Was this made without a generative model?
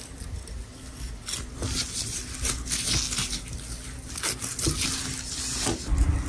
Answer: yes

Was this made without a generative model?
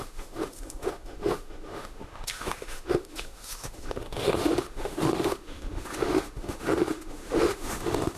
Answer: no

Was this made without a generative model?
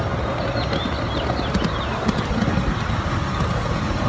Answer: yes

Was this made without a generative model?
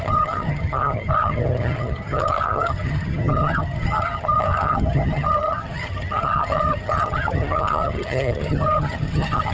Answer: no